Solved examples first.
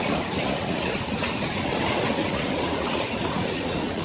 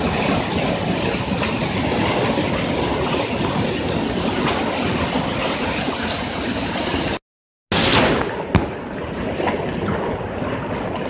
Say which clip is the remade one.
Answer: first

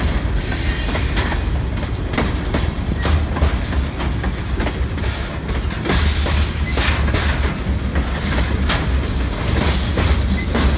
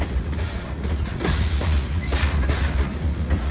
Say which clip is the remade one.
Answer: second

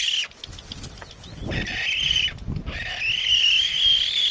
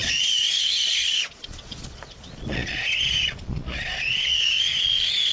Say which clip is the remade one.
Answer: second